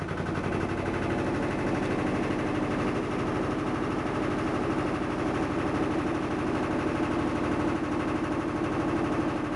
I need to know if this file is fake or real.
real